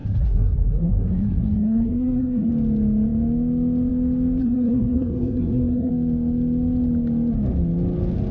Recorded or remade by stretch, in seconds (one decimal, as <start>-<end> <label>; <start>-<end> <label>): 0.0-2.5 remade; 2.5-4.4 recorded; 4.4-5.9 remade; 5.9-8.3 recorded